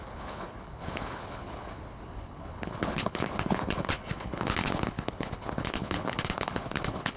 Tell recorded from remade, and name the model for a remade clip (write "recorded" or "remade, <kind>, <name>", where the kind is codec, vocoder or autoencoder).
remade, codec, HILCodec